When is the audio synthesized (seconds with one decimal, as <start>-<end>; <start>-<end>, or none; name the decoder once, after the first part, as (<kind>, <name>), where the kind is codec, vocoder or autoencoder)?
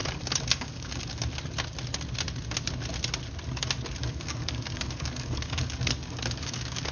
0.0-1.2 (codec, DAC); 4.0-6.9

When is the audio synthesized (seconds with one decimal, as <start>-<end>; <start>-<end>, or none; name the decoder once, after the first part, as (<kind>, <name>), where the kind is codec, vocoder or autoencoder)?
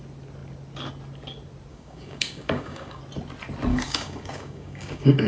1.7-3.0 (codec, DAC); 3.7-5.3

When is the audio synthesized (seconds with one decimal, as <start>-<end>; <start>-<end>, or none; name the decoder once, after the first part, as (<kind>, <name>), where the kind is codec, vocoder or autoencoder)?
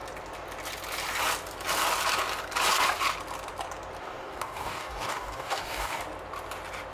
4.0-6.0 (codec, DAC)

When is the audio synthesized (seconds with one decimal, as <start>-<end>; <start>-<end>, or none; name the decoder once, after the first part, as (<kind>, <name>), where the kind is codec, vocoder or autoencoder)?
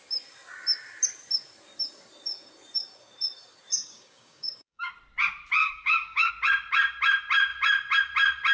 3.7-4.9 (codec, DAC); 5.6-6.3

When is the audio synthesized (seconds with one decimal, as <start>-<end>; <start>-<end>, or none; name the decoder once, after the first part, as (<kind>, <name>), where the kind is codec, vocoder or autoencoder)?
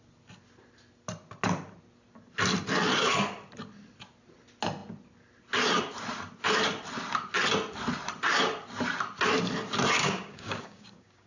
10.0-11.3 (codec, DAC)